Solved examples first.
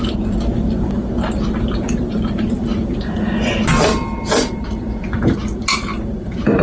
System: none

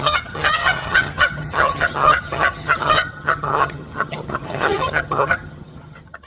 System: vocoder, HiFi-GAN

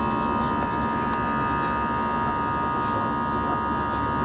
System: none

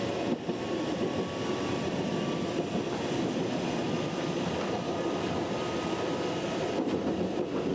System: none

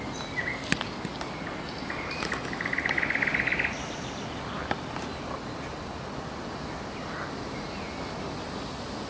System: none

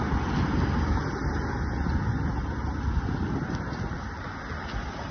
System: none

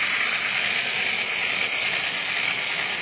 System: none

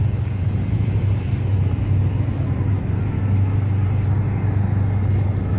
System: none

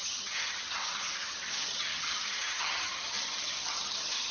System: vocoder, HiFi-GAN